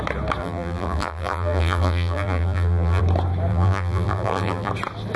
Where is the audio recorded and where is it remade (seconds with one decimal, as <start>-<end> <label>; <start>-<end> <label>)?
0.0-0.4 recorded; 0.4-3.0 remade; 3.0-3.5 recorded; 3.5-4.7 remade; 4.7-5.2 recorded